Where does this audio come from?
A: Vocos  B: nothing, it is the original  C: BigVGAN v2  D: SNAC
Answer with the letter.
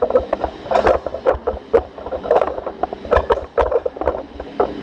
B